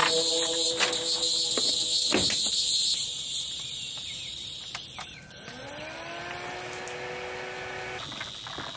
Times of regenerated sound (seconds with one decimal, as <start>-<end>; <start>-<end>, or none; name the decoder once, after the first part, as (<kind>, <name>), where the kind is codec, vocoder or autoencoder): 3.0-5.7 (vocoder, BigVGAN v2)